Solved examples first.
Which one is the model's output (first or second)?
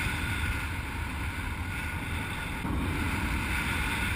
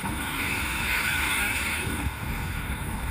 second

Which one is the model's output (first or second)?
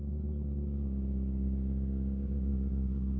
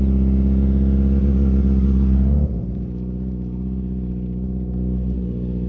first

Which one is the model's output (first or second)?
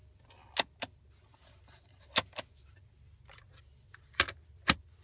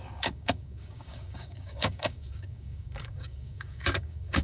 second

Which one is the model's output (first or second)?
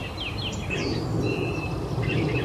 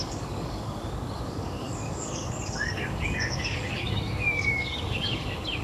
second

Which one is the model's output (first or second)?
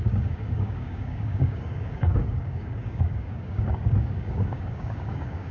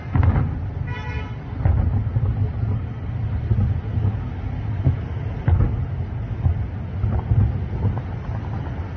first